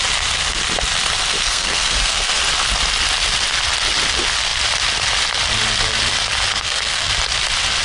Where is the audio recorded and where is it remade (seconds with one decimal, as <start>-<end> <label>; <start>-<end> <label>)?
0.0-1.4 recorded; 1.4-2.4 remade; 2.4-6.5 recorded; 6.5-7.1 remade; 7.1-7.8 recorded